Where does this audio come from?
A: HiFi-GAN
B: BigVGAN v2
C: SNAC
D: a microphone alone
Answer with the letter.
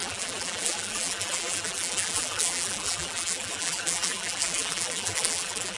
B